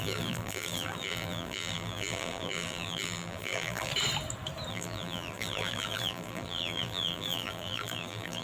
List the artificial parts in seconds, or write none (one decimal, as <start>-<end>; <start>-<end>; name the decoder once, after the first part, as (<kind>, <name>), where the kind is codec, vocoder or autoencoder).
0.0-3.9 (vocoder, BigVGAN v2); 4.7-8.4